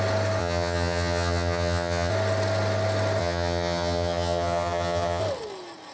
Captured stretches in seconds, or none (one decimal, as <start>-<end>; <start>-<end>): 0.0-0.4; 2.1-3.2; 5.2-5.9